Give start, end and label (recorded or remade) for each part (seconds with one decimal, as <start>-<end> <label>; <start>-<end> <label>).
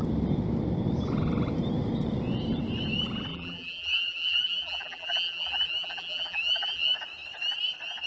0.0-3.3 recorded; 3.3-6.8 remade; 6.8-8.1 recorded